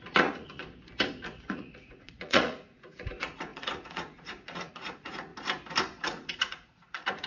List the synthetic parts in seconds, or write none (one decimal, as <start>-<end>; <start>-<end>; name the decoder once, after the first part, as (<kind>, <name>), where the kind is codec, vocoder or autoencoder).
0.0-0.6 (vocoder, Vocos); 1.2-5.3; 6.0-7.3